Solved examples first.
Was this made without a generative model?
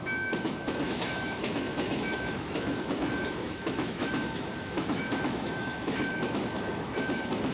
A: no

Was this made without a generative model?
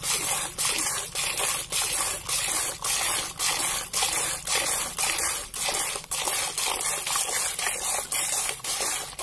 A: yes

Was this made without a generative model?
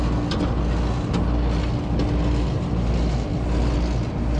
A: yes